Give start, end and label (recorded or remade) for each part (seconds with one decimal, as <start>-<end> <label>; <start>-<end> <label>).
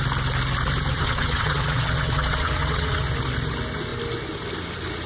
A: 0.0-0.9 recorded; 0.9-3.0 remade; 3.0-5.1 recorded